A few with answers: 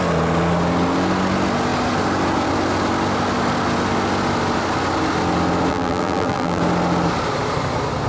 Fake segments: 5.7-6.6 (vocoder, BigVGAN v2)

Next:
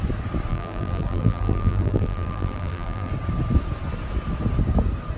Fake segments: 0.5-3.1 (vocoder, BigVGAN v2)